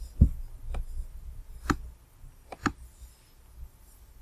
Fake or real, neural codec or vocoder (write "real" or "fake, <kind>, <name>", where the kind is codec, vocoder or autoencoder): real